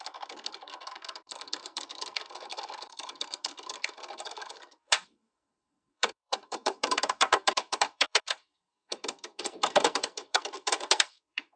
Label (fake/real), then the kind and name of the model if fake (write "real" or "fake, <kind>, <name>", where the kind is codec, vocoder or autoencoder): fake, codec, SNAC